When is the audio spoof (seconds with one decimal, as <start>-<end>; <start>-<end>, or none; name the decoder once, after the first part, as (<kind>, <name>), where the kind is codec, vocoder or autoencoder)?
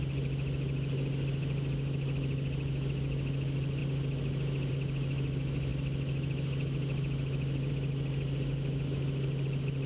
none